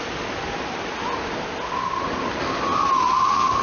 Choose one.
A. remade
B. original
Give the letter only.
B